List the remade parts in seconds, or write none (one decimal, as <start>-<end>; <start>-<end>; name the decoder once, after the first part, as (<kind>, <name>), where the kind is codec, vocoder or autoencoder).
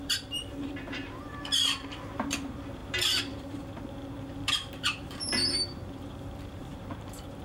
0.0-7.4 (vocoder, BigVGAN v2)